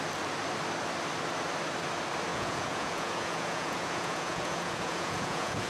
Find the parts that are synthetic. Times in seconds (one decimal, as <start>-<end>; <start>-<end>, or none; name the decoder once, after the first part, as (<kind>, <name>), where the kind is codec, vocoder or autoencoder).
2.3-5.7 (vocoder, Vocos)